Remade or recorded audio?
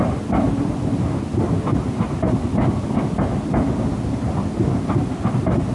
recorded